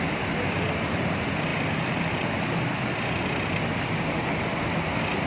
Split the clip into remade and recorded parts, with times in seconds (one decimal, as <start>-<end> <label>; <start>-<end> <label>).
0.0-5.3 recorded